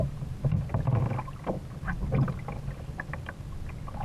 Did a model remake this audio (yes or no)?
no